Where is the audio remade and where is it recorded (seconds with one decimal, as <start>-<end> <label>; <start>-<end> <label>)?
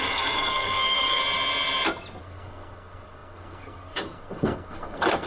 0.0-1.2 remade; 1.2-2.2 recorded; 2.2-5.3 remade